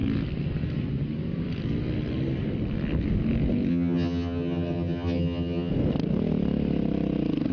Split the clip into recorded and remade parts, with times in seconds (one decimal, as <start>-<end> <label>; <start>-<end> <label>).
0.0-3.7 recorded; 3.7-5.7 remade; 5.7-7.5 recorded